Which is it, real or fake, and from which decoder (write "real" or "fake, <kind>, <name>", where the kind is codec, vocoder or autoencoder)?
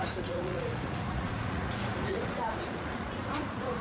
fake, vocoder, Vocos